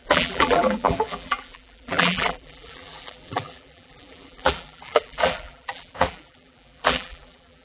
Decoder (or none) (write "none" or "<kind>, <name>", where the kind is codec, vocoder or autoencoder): vocoder, BigVGAN v2